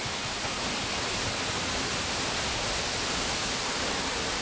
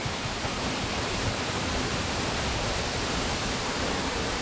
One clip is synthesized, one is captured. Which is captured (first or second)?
first